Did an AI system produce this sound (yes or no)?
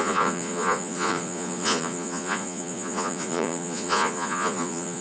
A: yes